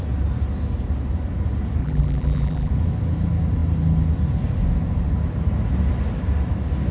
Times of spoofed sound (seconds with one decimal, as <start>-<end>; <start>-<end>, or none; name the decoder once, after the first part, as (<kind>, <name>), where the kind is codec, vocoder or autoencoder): 1.8-2.7 (vocoder, BigVGAN v2)